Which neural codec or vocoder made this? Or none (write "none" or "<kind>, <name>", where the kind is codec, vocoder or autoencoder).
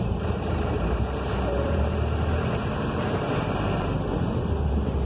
vocoder, BigVGAN v2